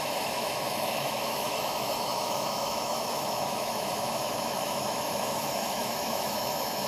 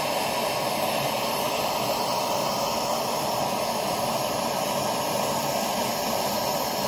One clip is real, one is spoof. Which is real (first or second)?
second